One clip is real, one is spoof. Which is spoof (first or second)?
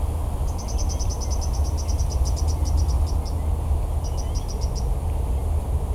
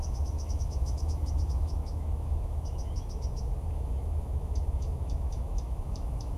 second